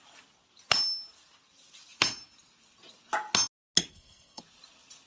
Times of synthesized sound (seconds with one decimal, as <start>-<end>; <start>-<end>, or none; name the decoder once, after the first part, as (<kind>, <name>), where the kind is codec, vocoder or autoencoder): 3.9-4.4 (codec, SNAC)